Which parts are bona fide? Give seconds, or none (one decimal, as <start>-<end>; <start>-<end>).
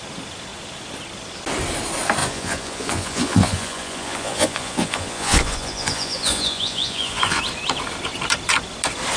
0.0-2.2; 7.4-9.2